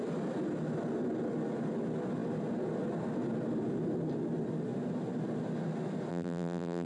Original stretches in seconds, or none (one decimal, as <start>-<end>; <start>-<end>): 0.0-6.1

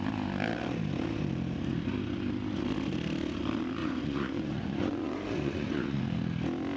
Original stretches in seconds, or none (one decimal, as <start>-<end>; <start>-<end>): 0.0-3.8; 6.0-6.8